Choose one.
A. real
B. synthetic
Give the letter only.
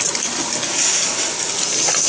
A